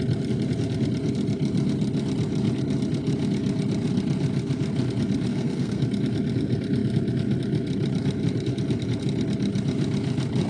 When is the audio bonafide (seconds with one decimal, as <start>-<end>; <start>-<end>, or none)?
0.0-5.3; 5.8-10.5